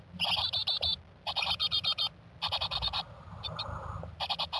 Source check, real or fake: fake